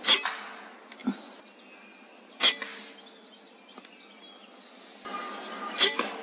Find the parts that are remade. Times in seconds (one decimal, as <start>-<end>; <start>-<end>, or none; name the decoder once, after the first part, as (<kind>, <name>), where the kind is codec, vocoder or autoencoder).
none